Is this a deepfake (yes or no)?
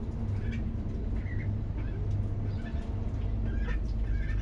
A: no